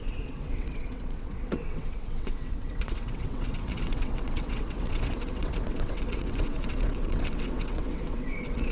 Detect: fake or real fake